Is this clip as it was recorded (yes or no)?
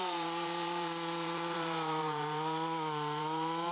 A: no